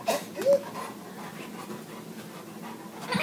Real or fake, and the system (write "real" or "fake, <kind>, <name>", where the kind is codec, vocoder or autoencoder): real